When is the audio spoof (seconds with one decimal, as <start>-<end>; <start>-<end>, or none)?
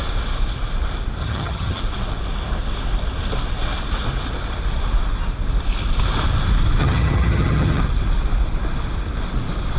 1.2-1.8; 6.8-7.8